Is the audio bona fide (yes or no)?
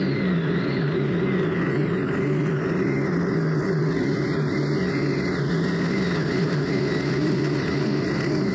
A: yes